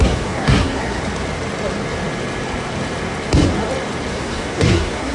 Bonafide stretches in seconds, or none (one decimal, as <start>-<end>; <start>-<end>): 1.0-4.1

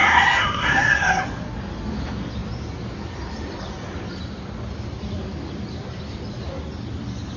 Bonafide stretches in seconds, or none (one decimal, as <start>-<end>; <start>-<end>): 1.2-7.4

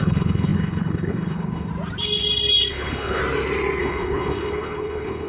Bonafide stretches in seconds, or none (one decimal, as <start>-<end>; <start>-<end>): 1.7-2.7; 3.2-3.8